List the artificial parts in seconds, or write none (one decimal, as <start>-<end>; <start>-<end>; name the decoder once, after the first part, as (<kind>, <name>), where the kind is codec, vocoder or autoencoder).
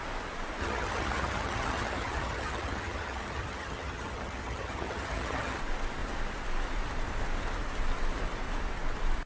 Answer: 0.6-5.6 (vocoder, HiFi-GAN)